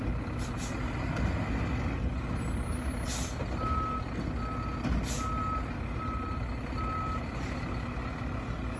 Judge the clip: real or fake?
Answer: real